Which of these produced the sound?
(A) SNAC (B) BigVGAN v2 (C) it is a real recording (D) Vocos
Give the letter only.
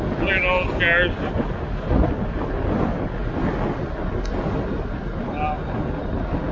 C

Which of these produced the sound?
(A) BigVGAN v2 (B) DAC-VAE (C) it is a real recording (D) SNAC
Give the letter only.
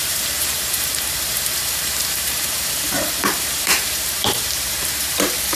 A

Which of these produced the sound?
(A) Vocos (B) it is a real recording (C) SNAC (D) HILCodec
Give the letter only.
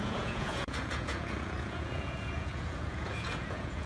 A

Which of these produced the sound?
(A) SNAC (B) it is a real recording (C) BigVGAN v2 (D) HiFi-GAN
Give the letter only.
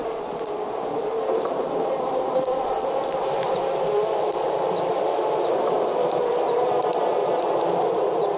B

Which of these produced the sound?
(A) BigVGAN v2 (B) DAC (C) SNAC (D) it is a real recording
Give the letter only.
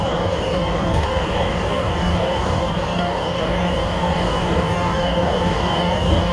B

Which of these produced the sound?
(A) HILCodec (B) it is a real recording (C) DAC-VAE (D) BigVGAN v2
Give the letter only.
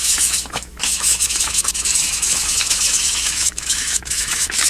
C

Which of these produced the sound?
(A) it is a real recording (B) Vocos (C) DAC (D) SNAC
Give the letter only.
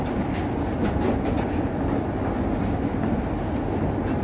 A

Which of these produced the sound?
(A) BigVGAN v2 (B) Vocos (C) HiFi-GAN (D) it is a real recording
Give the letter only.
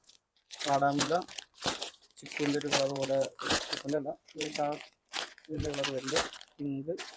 B